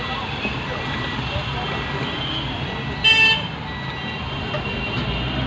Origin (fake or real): real